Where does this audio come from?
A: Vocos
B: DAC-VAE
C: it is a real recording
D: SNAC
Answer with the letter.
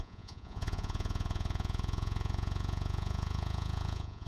A